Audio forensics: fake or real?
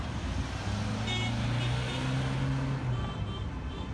real